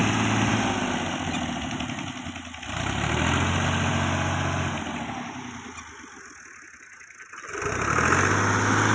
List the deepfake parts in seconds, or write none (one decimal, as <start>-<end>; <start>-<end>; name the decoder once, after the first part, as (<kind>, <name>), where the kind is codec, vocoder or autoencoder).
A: none